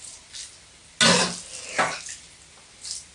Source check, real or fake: real